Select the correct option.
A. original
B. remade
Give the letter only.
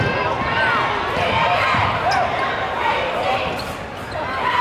A